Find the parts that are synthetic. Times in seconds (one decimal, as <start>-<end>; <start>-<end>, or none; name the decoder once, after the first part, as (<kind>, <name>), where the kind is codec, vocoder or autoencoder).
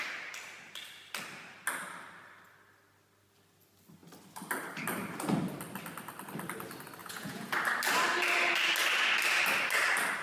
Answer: 7.0-7.5 (vocoder, Vocos)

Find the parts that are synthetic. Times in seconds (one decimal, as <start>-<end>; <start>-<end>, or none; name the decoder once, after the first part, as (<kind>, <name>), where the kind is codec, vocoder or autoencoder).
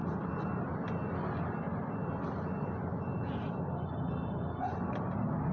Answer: none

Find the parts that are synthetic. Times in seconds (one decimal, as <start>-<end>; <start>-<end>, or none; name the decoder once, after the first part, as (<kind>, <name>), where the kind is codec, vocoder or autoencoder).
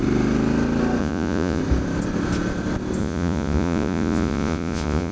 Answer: 1.0-1.6 (vocoder, Vocos); 3.0-5.1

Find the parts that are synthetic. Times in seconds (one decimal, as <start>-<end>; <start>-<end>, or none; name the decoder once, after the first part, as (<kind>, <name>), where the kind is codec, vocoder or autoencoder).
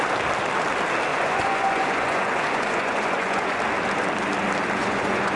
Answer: 1.1-3.6 (vocoder, Vocos); 4.8-5.4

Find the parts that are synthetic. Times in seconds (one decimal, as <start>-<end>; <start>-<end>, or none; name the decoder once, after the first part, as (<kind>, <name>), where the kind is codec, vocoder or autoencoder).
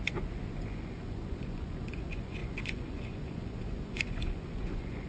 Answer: 0.0-5.1 (vocoder, Vocos)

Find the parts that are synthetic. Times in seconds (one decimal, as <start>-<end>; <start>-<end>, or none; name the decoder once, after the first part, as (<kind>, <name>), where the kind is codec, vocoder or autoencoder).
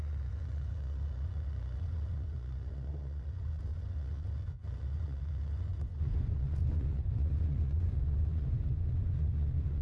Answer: 0.0-9.8 (vocoder, Vocos)